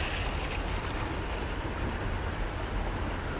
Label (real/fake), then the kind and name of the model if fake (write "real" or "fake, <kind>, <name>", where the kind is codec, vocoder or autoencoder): real